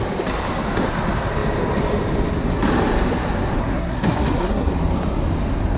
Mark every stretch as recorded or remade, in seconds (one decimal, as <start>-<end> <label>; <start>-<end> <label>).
0.0-3.6 recorded; 3.6-4.7 remade; 4.7-5.8 recorded